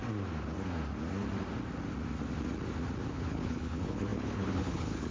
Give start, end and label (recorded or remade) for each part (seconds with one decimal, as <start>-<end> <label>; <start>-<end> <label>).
0.0-3.1 recorded; 3.1-5.1 remade